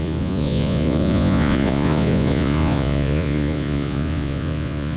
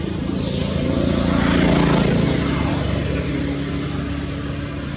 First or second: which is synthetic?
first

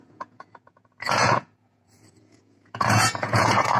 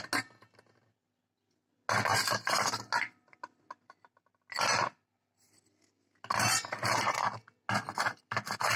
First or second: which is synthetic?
first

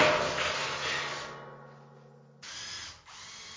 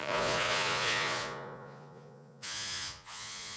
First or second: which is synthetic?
second